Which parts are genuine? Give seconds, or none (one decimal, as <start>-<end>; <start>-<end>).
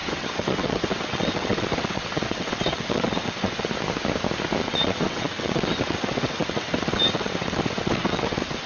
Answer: 3.7-4.6